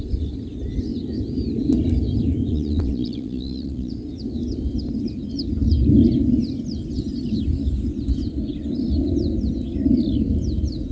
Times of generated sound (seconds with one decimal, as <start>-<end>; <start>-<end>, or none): 2.5-3.9